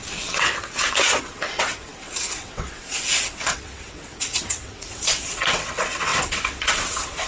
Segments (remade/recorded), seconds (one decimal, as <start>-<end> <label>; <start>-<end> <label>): 0.0-7.3 remade